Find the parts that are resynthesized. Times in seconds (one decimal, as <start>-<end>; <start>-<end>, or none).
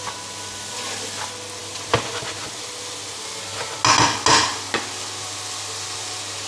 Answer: none